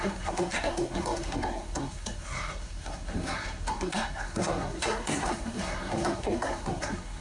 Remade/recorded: remade